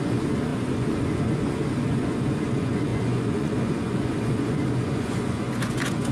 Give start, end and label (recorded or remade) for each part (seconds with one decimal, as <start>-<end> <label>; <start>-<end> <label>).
0.0-6.1 remade